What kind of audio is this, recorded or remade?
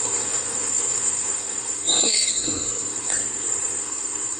remade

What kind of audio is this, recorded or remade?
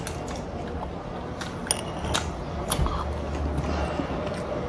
recorded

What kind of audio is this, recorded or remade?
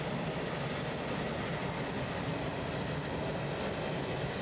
recorded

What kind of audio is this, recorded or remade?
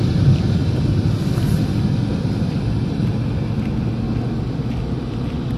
recorded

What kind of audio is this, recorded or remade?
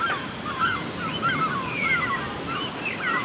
recorded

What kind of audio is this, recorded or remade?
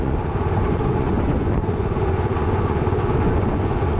remade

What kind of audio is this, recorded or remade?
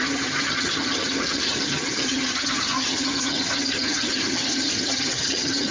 remade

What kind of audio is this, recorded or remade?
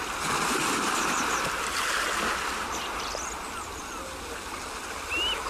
recorded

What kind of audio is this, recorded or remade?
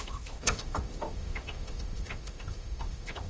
remade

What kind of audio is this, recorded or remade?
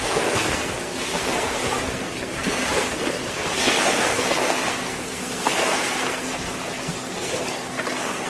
remade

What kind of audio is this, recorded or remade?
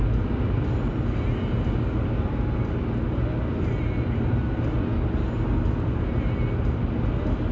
recorded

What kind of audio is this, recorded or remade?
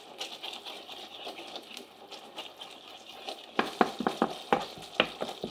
recorded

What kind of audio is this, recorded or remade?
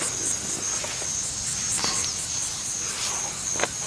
recorded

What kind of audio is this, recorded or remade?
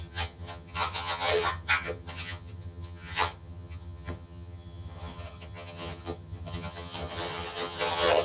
remade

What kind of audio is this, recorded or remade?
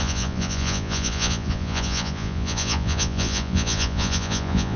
remade